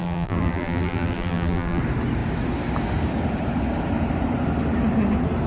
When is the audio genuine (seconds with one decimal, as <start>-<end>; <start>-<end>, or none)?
1.8-5.5